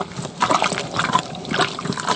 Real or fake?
real